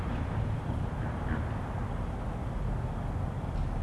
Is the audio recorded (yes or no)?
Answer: yes